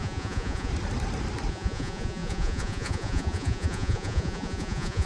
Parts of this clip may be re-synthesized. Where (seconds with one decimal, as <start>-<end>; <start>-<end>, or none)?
0.0-0.7; 1.5-5.1

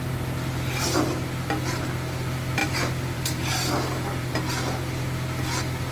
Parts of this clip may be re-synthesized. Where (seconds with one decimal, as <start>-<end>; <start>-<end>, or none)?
2.6-4.3